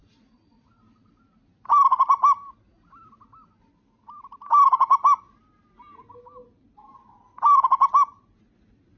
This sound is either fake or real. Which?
real